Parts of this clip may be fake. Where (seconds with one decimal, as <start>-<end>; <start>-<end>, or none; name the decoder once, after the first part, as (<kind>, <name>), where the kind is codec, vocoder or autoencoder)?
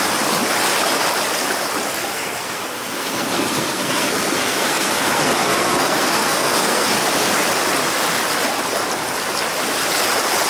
2.0-6.9 (codec, SNAC)